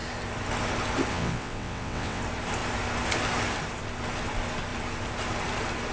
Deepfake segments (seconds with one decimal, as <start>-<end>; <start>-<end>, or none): 1.1-2.2